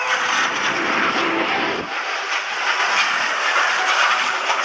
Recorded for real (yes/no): no